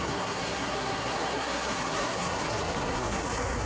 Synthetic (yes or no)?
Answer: yes